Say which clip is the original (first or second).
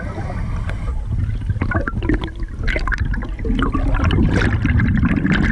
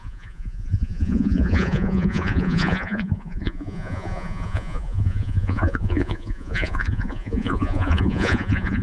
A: first